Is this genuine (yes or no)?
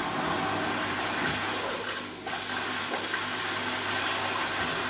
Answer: yes